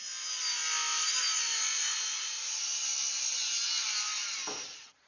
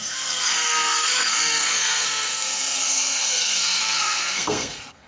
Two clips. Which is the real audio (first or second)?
first